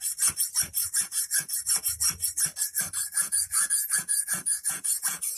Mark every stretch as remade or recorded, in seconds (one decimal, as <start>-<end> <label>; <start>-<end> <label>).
0.0-0.8 recorded; 0.8-1.8 remade; 1.8-3.2 recorded; 3.2-5.4 remade